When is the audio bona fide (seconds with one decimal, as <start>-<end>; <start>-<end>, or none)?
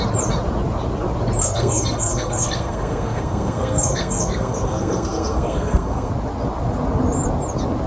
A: 0.0-1.4; 6.1-7.9